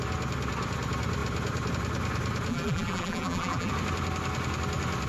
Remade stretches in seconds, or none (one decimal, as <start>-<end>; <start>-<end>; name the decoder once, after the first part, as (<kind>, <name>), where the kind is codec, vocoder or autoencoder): 2.5-3.7 (vocoder, BigVGAN v2)